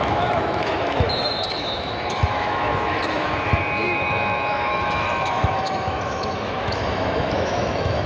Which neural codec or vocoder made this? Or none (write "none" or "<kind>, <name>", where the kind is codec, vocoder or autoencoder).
autoencoder, DAC-VAE